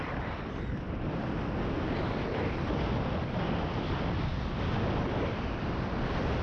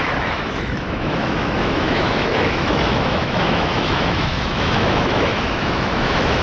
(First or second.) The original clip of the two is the first